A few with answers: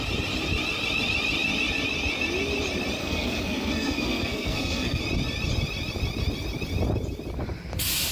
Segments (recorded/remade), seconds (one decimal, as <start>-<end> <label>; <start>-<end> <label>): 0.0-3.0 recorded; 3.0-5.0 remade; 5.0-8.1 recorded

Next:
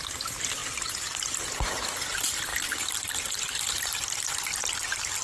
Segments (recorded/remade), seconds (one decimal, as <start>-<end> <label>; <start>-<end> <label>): 0.0-5.2 recorded

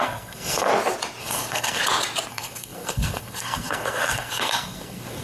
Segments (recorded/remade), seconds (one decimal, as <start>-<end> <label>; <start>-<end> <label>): 0.0-0.7 remade; 0.7-1.2 recorded; 1.2-1.8 remade; 1.8-2.3 recorded; 2.3-5.2 remade

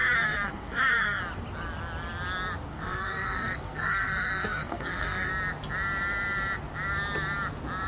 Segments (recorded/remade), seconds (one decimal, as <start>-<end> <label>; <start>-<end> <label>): 0.0-1.2 remade; 1.2-2.7 recorded; 2.7-5.3 remade; 5.3-7.9 recorded